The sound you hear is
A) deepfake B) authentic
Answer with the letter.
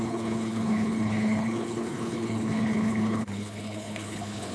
A